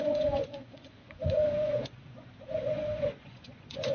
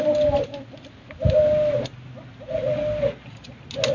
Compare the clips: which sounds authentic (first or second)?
second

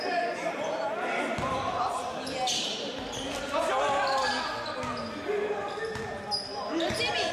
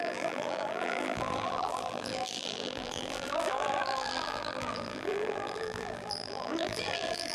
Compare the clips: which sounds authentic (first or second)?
first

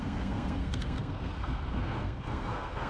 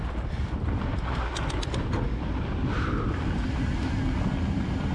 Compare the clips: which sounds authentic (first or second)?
second